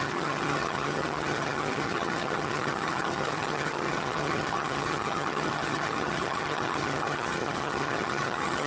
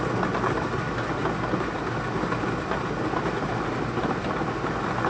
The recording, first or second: second